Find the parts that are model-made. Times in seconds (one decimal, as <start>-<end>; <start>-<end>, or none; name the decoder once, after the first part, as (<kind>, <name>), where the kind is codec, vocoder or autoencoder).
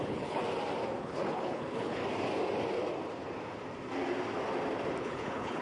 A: 0.0-0.4 (codec, HILCodec); 1.0-2.0; 5.0-5.6